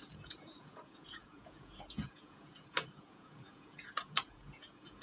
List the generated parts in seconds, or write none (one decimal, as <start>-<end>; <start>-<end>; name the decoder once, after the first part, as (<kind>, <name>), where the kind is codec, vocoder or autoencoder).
0.0-5.0 (vocoder, Vocos)